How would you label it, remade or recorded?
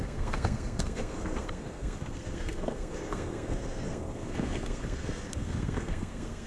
remade